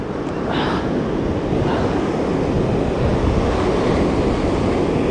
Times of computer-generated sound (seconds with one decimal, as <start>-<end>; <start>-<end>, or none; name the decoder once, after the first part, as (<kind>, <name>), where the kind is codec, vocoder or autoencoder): none